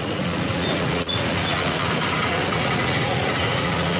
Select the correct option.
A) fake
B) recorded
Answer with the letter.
A